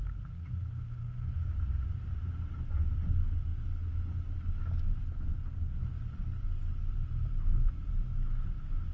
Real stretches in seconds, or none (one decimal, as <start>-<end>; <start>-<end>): 0.0-8.9